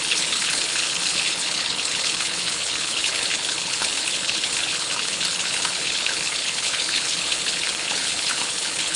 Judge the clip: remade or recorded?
remade